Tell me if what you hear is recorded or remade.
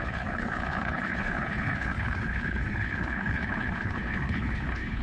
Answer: remade